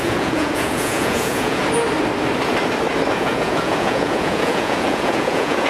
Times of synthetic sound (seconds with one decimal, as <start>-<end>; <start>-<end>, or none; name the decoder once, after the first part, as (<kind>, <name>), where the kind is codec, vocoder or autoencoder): 0.0-1.6 (vocoder, Vocos); 3.1-5.7